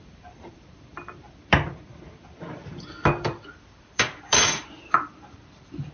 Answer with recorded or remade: remade